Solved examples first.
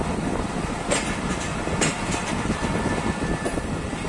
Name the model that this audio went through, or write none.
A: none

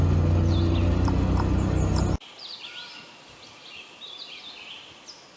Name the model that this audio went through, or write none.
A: none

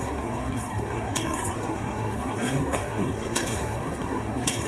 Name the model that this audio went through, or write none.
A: codec, SNAC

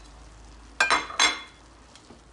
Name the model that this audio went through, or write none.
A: none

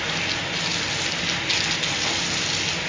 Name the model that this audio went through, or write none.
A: none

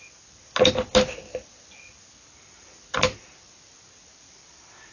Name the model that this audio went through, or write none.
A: none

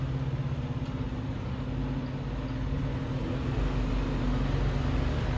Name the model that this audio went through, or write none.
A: none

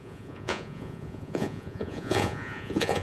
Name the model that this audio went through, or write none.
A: vocoder, Vocos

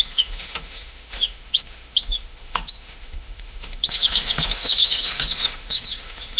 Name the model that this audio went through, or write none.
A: autoencoder, DAC-VAE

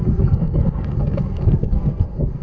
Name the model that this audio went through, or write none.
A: codec, SNAC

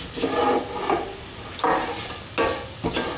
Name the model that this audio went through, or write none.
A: none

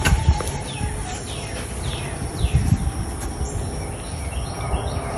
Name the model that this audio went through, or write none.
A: none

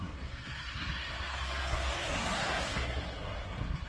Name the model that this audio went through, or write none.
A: codec, SNAC